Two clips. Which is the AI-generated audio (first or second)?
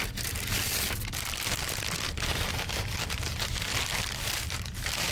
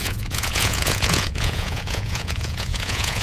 second